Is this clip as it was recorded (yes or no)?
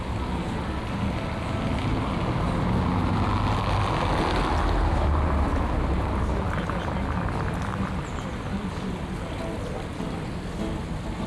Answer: yes